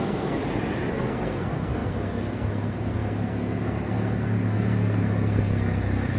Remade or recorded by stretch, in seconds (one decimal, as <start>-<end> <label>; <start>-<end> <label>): 0.0-0.4 remade; 0.4-0.9 recorded; 0.9-6.2 remade